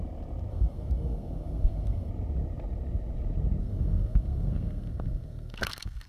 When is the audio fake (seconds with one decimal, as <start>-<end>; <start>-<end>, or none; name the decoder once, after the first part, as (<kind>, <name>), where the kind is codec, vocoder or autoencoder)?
0.5-2.1 (codec, SNAC); 3.6-6.1